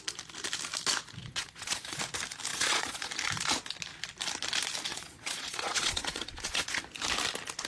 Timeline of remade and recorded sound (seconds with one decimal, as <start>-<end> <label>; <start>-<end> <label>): 0.0-1.2 recorded; 1.2-2.0 remade; 2.0-2.5 recorded; 2.5-3.1 remade; 3.1-4.9 recorded; 4.9-6.8 remade; 6.8-7.7 recorded

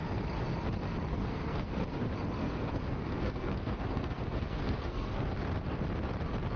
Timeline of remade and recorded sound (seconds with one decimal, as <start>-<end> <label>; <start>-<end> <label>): 0.0-1.1 recorded; 1.1-2.0 remade; 2.0-2.4 recorded; 2.4-5.3 remade; 5.3-6.6 recorded

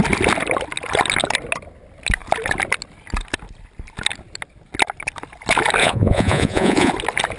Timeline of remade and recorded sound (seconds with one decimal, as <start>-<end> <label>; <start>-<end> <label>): 0.0-5.8 recorded; 5.8-6.9 remade; 6.9-7.4 recorded

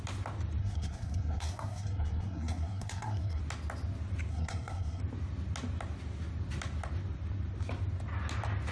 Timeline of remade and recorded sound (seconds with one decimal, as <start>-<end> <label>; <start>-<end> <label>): 0.0-0.6 recorded; 0.6-3.4 remade; 3.4-4.3 recorded; 4.3-5.0 remade; 5.0-8.7 recorded

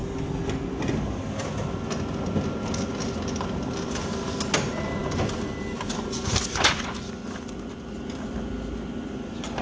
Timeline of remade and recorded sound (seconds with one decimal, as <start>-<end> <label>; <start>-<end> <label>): 0.0-9.6 recorded

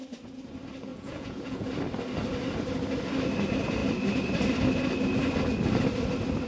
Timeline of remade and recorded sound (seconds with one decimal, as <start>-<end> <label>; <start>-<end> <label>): 0.0-0.9 recorded; 0.9-1.7 remade; 1.7-6.5 recorded

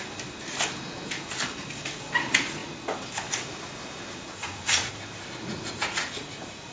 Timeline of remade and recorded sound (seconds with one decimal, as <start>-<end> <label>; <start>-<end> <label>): 0.0-4.4 recorded; 4.4-4.9 remade; 4.9-5.4 recorded; 5.4-6.7 remade